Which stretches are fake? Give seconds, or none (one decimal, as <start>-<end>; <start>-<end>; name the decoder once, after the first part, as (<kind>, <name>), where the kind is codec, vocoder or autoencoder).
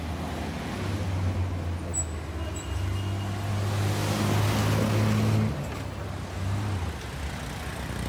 none